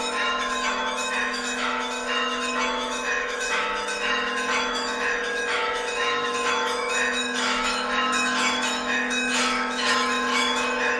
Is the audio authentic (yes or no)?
no